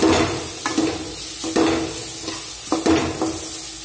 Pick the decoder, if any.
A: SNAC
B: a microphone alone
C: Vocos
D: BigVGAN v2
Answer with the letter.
B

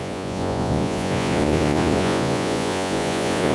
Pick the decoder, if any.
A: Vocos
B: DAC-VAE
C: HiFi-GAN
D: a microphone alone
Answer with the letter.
A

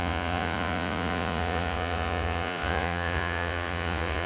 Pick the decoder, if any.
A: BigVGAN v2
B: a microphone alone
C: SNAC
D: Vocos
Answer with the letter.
D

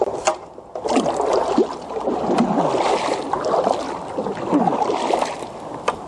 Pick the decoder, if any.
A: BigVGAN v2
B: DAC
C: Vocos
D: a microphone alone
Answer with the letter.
D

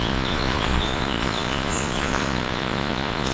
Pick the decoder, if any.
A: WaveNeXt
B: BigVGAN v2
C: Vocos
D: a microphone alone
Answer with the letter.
C